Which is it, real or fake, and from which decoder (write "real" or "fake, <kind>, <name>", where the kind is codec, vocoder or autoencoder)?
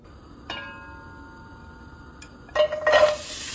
real